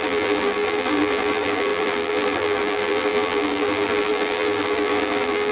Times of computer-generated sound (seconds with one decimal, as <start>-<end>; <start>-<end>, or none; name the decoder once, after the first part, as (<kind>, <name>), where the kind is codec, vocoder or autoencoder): 0.0-5.5 (vocoder, BigVGAN v2)